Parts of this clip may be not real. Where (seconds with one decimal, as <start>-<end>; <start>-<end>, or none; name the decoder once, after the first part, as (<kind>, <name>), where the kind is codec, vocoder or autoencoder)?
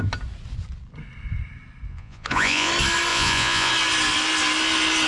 1.9-2.7 (vocoder, Vocos); 3.1-3.7